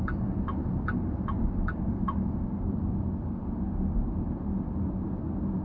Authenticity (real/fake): real